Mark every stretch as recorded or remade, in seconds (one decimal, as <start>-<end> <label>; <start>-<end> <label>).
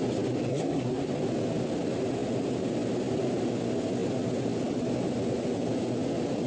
0.0-0.5 recorded; 0.5-1.1 remade; 1.1-6.5 recorded